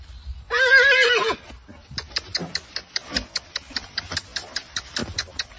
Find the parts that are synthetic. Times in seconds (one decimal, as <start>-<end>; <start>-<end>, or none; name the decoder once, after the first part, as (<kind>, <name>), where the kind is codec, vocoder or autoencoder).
5.0-5.6 (vocoder, BigVGAN v2)